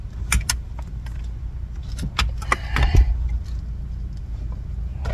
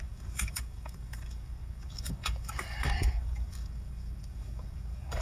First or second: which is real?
first